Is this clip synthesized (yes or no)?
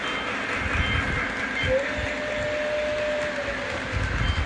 no